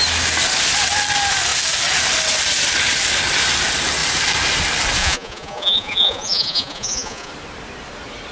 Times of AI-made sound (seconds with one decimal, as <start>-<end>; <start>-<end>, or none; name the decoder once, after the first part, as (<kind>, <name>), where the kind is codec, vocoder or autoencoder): 5.0-7.3 (vocoder, Vocos)